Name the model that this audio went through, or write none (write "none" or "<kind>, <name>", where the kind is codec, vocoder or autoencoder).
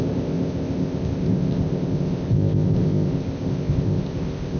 codec, ZipCodec